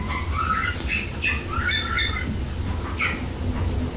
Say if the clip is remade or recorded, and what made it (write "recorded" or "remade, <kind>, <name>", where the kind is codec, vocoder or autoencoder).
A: recorded